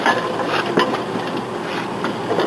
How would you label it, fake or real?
real